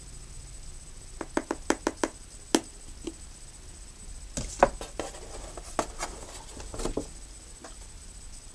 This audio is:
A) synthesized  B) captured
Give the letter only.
B